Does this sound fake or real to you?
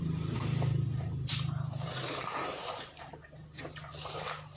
fake